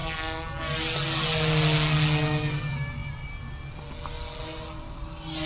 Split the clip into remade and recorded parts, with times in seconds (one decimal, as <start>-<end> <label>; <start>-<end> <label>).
0.0-5.5 recorded